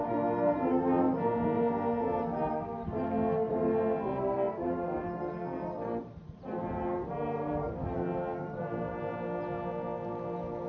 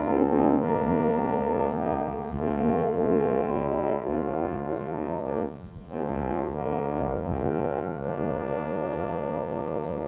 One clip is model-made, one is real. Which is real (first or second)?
first